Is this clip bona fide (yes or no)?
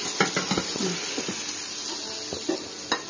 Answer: yes